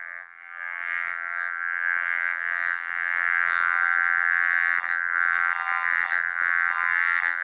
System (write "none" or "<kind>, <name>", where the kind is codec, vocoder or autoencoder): vocoder, BigVGAN v2